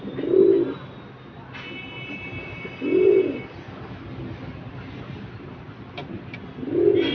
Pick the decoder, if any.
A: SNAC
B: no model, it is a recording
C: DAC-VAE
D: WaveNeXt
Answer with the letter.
B